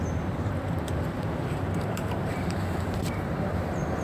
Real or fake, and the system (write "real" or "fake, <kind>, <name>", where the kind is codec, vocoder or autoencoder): fake, vocoder, BigVGAN v2